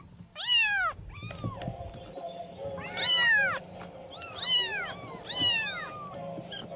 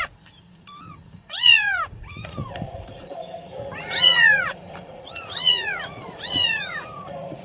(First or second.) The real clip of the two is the first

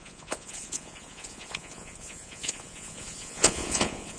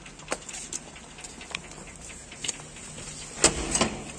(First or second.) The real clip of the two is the second